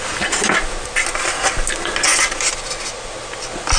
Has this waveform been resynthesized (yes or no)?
no